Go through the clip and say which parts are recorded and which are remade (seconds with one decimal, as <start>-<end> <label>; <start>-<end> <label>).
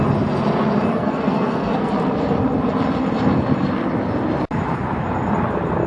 0.0-0.9 recorded; 0.9-1.9 remade; 1.9-5.9 recorded